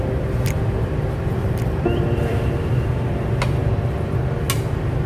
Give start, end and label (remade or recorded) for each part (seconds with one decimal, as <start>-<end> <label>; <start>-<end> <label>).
0.0-1.4 recorded; 1.4-2.5 remade; 2.5-5.1 recorded